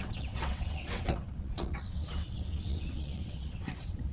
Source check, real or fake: fake